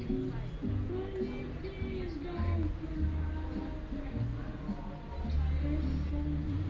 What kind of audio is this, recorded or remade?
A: recorded